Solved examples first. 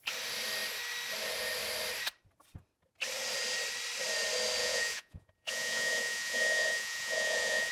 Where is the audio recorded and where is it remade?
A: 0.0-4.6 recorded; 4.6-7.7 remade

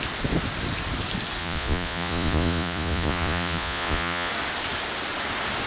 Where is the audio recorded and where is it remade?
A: 0.0-1.4 recorded; 1.4-4.3 remade; 4.3-5.7 recorded

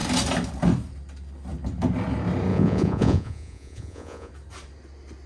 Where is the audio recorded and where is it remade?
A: 0.0-2.5 recorded; 2.5-4.3 remade; 4.3-5.3 recorded

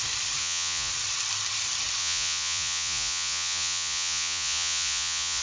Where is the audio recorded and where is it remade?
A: 0.0-0.4 recorded; 0.4-0.9 remade; 0.9-2.0 recorded; 2.0-5.4 remade